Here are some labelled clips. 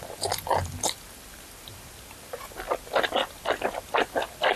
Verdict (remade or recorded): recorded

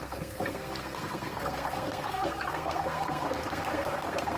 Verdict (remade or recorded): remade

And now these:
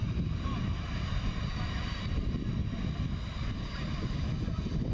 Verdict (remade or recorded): recorded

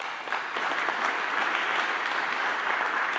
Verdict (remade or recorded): recorded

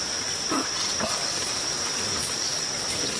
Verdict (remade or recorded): recorded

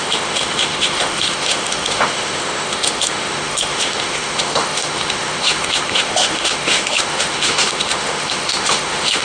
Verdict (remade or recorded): remade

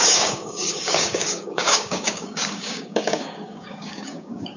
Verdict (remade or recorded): remade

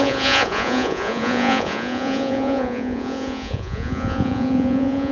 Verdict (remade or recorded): remade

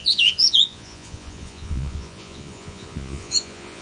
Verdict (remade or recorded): remade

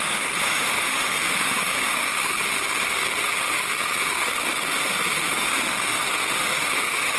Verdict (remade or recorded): remade